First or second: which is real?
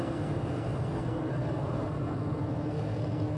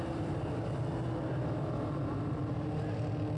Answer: second